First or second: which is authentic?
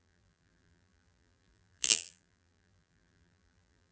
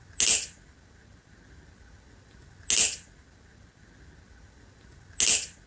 second